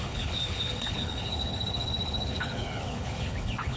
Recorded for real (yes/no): no